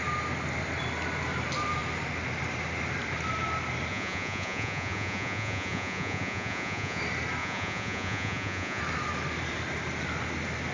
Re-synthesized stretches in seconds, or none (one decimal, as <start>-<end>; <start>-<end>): 3.9-7.0; 7.4-8.8